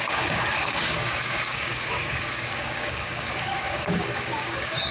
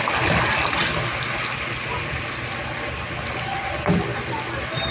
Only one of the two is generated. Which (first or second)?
first